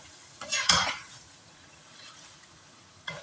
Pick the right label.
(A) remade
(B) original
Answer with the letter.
A